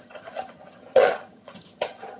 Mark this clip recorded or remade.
remade